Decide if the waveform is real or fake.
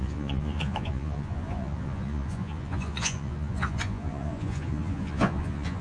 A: fake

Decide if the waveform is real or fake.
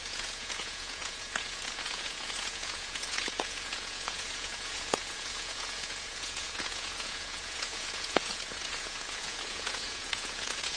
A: fake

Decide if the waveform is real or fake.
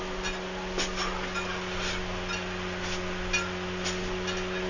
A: real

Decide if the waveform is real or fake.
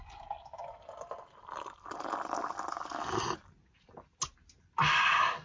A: real